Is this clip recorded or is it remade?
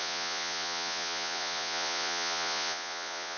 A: remade